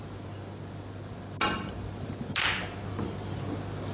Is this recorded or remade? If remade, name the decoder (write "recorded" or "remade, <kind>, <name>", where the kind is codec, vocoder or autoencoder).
recorded